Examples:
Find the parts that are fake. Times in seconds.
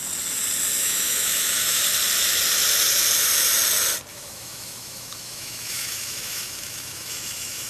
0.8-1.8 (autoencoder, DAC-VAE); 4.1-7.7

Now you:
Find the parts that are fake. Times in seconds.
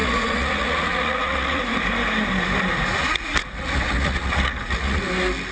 0.0-1.6 (vocoder, Vocos); 3.0-5.0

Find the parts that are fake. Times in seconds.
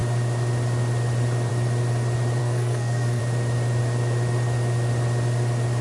2.4-3.2 (codec, SNAC)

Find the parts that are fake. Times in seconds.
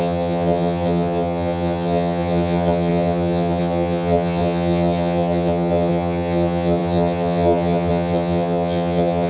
0.0-9.3 (vocoder, HiFi-GAN)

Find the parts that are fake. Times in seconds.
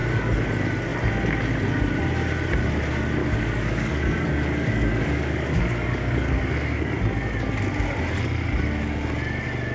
0.0-0.5 (codec, DAC); 3.2-7.0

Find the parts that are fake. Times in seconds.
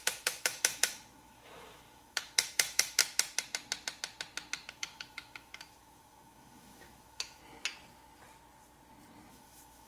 0.0-3.0 (autoencoder, DAC-VAE); 4.7-7.4; 9.3-9.9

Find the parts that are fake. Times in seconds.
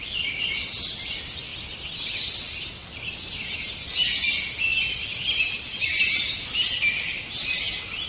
5.0-5.8 (vocoder, BigVGAN v2)